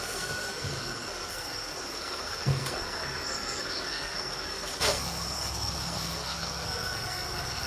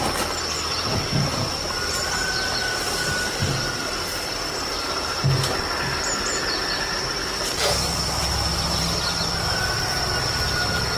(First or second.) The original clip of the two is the second